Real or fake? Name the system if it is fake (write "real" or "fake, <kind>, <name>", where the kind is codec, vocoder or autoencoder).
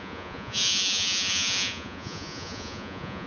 fake, vocoder, Vocos